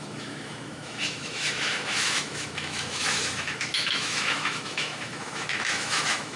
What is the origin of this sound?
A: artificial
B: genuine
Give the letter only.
A